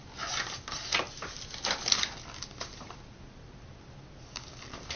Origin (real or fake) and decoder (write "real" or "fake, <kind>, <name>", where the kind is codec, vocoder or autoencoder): real